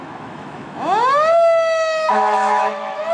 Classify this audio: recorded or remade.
remade